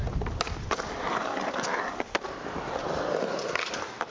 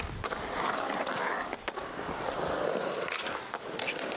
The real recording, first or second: first